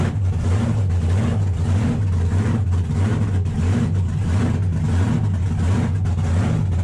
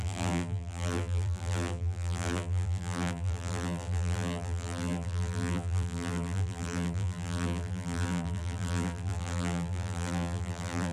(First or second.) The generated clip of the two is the second